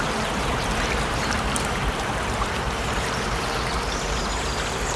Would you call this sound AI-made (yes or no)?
yes